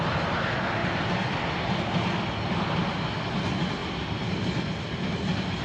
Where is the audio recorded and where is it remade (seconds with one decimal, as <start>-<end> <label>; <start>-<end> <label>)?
0.0-5.6 recorded